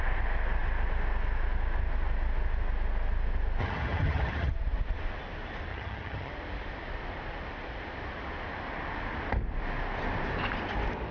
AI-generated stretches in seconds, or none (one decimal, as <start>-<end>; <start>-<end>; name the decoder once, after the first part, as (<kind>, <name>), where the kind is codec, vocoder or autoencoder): 3.6-4.5 (vocoder, HiFi-GAN); 5.7-6.3